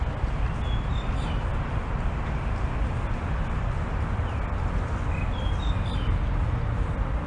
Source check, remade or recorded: recorded